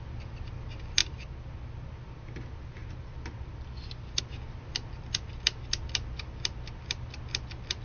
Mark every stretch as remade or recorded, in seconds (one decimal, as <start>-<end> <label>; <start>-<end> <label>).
0.0-7.8 recorded